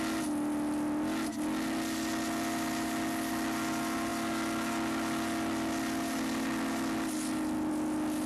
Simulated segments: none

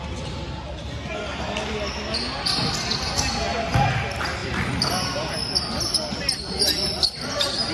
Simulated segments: none

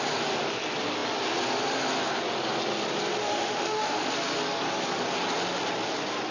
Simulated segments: 3.2-4.1 (autoencoder, DAC-VAE)

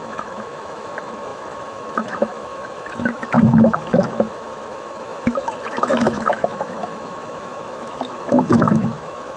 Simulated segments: 0.0-9.4 (autoencoder, DAC-VAE)

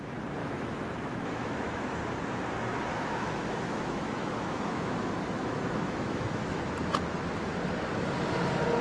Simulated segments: 0.4-2.0 (autoencoder, DAC-VAE); 2.9-6.6

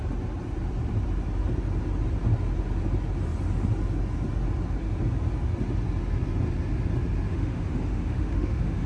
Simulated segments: 7.3-8.9 (autoencoder, DAC-VAE)